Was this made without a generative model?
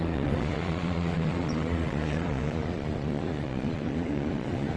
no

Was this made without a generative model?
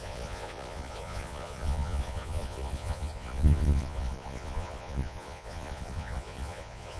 no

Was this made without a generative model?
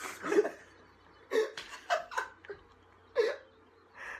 yes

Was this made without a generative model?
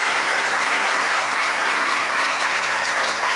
no